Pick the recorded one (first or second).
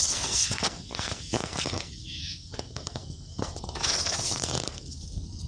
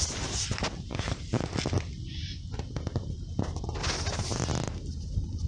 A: second